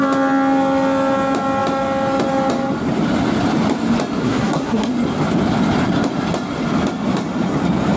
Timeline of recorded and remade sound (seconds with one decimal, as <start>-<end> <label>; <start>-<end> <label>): 0.0-4.2 recorded; 4.2-4.9 remade; 4.9-8.0 recorded